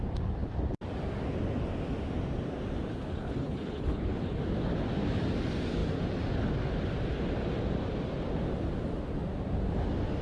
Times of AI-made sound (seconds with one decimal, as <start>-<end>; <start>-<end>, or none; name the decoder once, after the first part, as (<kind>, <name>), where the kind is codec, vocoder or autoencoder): 2.9-4.4 (codec, HILCodec)